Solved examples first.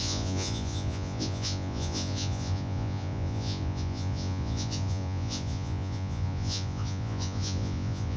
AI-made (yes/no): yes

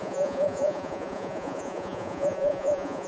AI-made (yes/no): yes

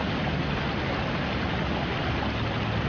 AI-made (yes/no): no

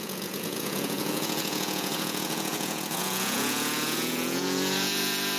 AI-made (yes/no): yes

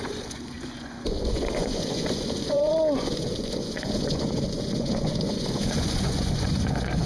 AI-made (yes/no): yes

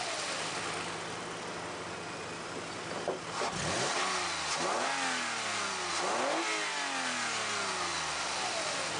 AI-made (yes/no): no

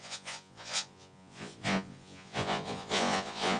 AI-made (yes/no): yes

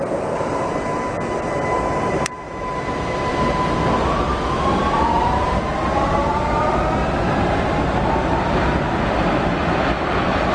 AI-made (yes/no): no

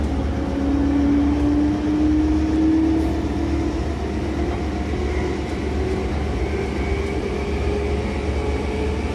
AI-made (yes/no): no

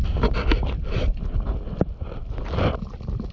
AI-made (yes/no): no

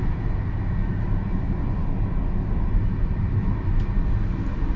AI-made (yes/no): no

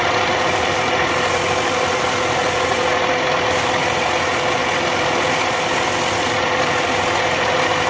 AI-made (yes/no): no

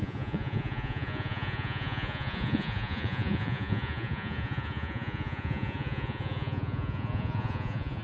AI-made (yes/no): yes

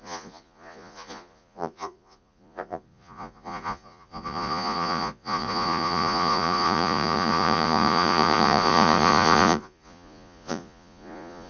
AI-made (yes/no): yes